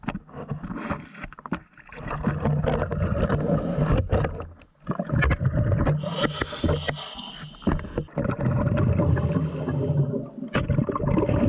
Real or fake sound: real